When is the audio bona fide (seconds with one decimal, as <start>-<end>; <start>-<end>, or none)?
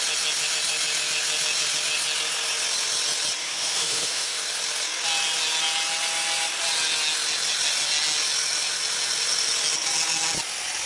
0.0-3.4; 4.4-10.9